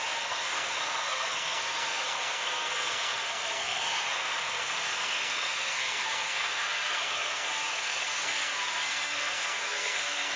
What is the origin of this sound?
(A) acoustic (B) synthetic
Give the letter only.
B